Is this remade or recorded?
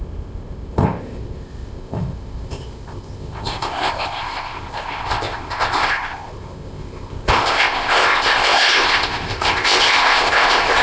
remade